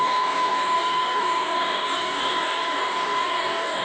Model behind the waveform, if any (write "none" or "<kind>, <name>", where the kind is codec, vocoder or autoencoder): codec, DAC